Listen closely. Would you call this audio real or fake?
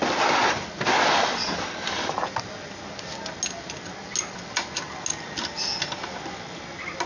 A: real